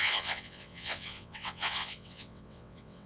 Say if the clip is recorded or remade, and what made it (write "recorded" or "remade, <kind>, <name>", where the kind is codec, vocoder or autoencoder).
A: remade, vocoder, WaveNeXt